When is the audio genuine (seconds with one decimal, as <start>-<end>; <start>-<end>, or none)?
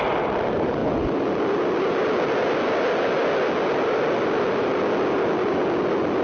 0.0-6.2